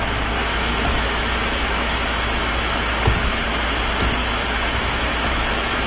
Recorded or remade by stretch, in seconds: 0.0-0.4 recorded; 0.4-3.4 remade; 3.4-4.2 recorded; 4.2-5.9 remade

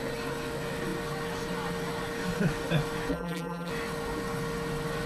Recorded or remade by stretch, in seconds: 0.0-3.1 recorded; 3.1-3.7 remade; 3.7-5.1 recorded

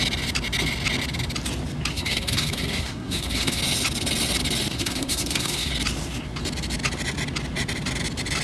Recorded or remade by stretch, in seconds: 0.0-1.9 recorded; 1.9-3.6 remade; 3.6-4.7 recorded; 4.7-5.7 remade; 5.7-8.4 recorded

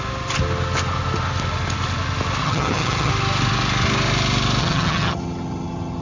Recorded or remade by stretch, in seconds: 0.0-2.4 recorded; 2.4-3.1 remade; 3.1-4.6 recorded; 4.6-6.0 remade